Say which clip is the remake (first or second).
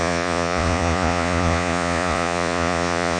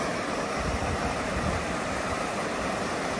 first